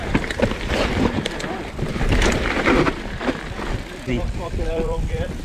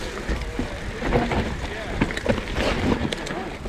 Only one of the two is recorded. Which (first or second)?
second